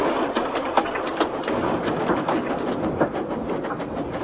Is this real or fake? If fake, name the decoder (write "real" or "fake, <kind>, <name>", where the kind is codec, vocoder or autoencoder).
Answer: real